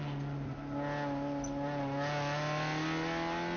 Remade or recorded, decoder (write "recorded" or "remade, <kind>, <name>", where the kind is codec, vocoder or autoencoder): recorded